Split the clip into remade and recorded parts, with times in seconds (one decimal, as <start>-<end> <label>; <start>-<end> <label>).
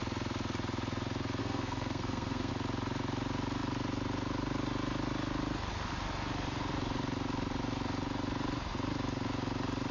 0.0-1.4 recorded; 1.4-2.5 remade; 2.5-9.9 recorded